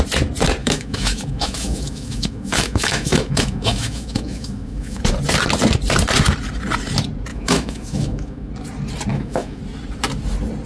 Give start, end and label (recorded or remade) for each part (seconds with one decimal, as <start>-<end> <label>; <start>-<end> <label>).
0.0-0.6 recorded; 0.6-5.0 remade; 5.0-7.3 recorded; 7.3-8.5 remade; 8.5-9.1 recorded; 9.1-9.6 remade; 9.6-10.7 recorded